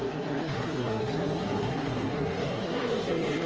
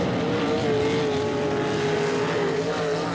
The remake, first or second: first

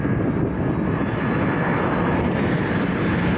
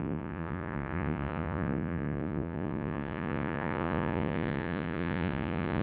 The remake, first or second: second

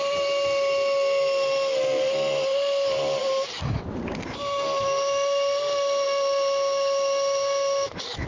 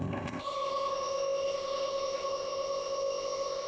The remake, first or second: second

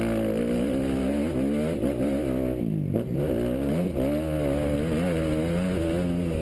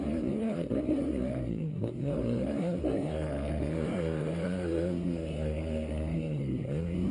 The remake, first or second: second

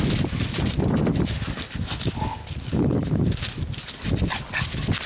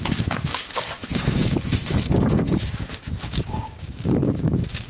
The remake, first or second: second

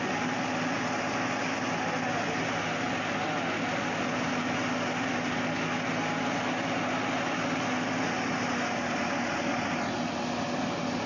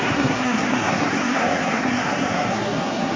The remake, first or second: second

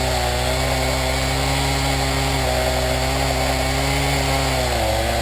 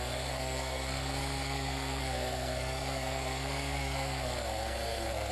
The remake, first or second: second